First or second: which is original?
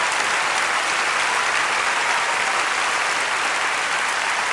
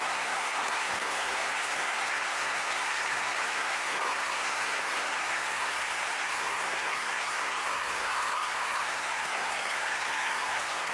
first